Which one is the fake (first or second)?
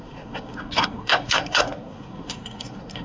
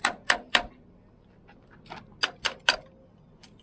first